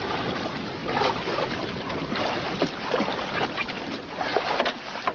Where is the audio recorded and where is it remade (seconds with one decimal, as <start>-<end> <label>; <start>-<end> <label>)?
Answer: 0.0-5.1 recorded